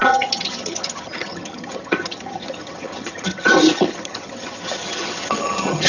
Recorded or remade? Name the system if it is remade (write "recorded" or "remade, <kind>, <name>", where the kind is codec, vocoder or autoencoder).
remade, vocoder, HiFi-GAN